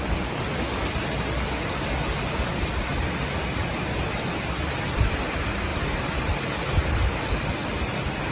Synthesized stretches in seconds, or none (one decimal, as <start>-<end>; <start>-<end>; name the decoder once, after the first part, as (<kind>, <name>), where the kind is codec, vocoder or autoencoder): none